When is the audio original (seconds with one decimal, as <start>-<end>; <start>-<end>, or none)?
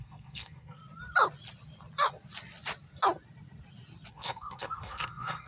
0.8-4.1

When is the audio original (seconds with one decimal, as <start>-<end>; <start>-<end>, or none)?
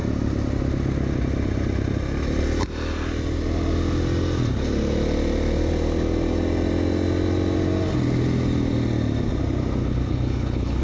0.0-9.8